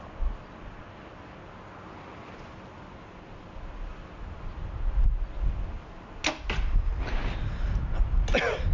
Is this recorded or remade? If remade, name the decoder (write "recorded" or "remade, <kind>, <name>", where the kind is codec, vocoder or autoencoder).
recorded